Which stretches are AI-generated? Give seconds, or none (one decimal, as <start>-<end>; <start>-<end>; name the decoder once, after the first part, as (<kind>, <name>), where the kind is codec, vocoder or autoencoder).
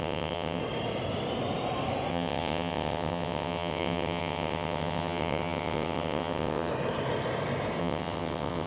0.0-0.6 (vocoder, WaveNeXt); 2.1-6.7; 7.8-8.7